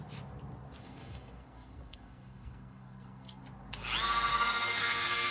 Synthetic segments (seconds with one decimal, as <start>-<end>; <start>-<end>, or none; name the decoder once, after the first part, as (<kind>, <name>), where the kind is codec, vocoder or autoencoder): 0.8-3.4 (codec, SNAC); 4.3-5.3